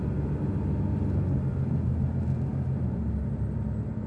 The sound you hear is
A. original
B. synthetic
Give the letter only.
A